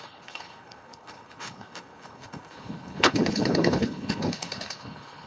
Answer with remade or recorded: remade